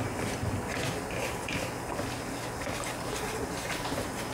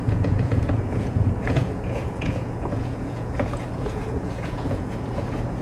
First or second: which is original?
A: first